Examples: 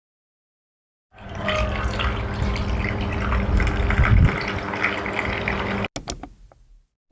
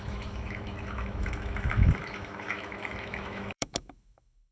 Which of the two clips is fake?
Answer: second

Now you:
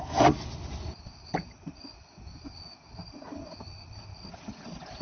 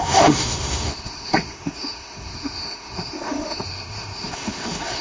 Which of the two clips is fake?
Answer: second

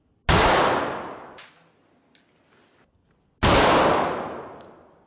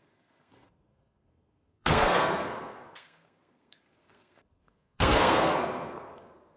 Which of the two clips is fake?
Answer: second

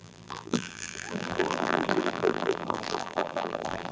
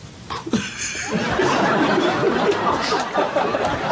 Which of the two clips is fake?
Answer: first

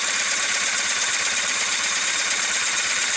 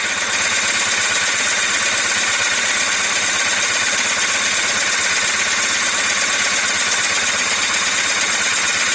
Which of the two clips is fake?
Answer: first